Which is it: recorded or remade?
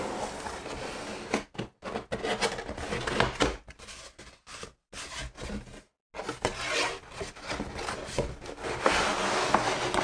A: recorded